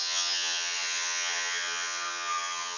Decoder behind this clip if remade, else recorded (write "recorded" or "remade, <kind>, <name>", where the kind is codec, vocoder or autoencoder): remade, vocoder, HiFi-GAN